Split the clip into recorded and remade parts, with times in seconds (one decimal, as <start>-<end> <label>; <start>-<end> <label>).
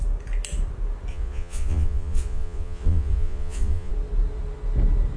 0.0-1.1 recorded; 1.1-3.9 remade; 3.9-5.2 recorded